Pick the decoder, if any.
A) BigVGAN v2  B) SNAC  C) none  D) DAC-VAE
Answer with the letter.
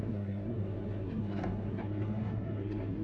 B